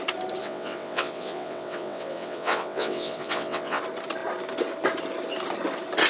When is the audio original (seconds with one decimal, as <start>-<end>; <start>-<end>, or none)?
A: 0.0-0.4; 3.8-6.1